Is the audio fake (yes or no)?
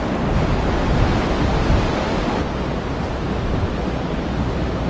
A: no